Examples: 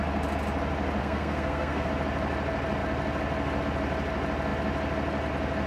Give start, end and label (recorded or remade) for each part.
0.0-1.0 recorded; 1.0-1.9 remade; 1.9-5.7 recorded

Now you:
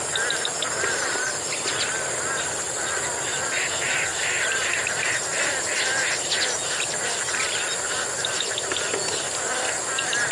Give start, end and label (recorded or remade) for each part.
0.0-4.1 recorded; 4.1-5.1 remade; 5.1-10.3 recorded

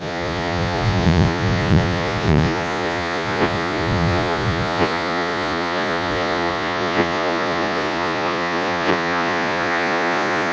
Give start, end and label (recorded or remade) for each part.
0.0-10.5 remade